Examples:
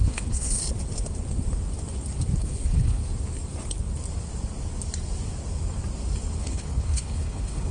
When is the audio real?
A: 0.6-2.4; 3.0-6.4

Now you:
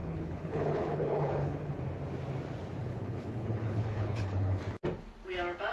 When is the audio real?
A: 1.8-2.8; 4.6-5.7